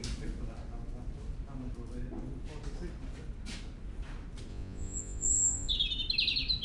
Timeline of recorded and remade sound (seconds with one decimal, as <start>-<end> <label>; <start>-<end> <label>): 0.0-4.5 recorded; 4.5-5.7 remade; 5.7-6.6 recorded